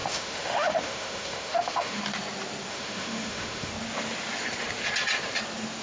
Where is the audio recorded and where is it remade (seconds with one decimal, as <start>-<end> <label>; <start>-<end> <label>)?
0.0-2.0 remade; 2.0-2.7 recorded; 2.7-3.7 remade; 3.7-5.8 recorded